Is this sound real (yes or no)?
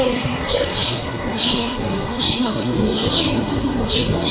no